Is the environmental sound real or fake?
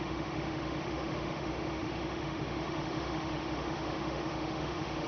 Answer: fake